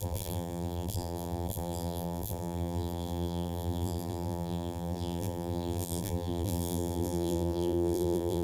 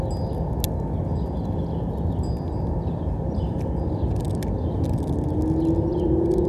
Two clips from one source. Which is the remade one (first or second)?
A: first